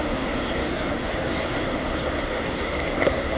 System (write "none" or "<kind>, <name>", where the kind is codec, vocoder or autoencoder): codec, SNAC